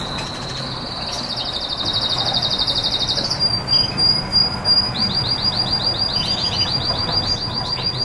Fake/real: real